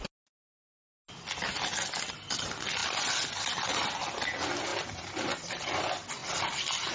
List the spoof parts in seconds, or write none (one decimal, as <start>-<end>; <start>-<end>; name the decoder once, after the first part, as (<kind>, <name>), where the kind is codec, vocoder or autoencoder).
2.8-3.7 (vocoder, BigVGAN v2); 4.7-5.5; 6.2-6.9